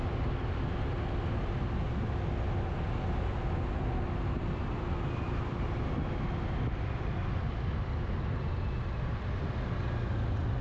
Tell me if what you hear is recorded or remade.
recorded